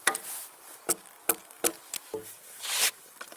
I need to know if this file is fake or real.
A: real